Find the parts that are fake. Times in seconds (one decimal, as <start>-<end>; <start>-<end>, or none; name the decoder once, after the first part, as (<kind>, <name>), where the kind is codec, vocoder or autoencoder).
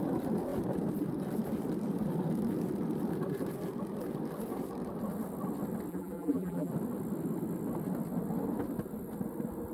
5.9-6.7 (vocoder, BigVGAN v2)